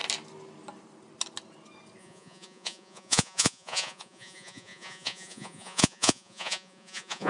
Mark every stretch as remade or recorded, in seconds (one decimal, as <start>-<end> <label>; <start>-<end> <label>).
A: 0.0-2.0 recorded; 2.0-7.3 remade

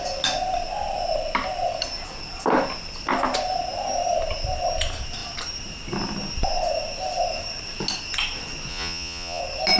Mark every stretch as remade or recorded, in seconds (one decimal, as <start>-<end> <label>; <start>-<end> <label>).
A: 0.0-8.7 recorded; 8.7-9.4 remade; 9.4-9.8 recorded

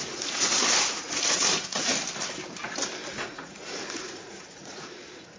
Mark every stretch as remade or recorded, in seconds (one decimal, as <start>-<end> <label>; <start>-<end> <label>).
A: 0.0-1.9 remade; 1.9-3.2 recorded; 3.2-5.4 remade

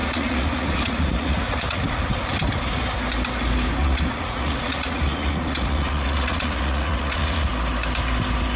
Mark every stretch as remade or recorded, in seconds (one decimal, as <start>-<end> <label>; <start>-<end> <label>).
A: 0.0-2.0 remade; 2.0-3.8 recorded; 3.8-7.5 remade; 7.5-8.6 recorded

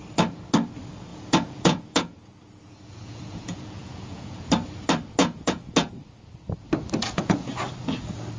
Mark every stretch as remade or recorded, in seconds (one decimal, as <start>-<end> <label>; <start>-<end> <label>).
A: 0.0-1.1 recorded; 1.1-4.5 remade; 4.5-5.2 recorded; 5.2-5.9 remade; 5.9-7.0 recorded; 7.0-7.5 remade; 7.5-8.4 recorded

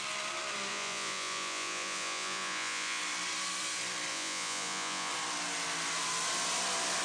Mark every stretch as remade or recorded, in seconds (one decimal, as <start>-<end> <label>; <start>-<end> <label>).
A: 0.0-0.7 recorded; 0.7-3.0 remade; 3.0-4.1 recorded; 4.1-5.1 remade; 5.1-7.0 recorded

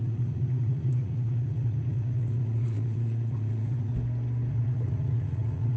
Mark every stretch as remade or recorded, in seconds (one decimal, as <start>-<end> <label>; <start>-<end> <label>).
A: 0.0-3.9 remade; 3.9-4.5 recorded; 4.5-5.8 remade

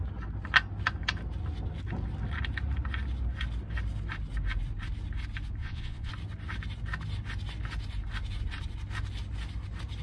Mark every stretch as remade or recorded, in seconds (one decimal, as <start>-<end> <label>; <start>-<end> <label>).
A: 0.0-5.6 recorded; 5.6-6.1 remade; 6.1-10.0 recorded